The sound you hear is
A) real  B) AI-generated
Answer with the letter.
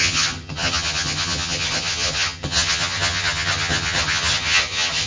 B